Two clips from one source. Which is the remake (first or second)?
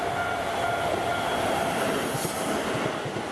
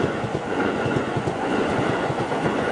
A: second